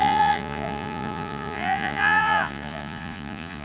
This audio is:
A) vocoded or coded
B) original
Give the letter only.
A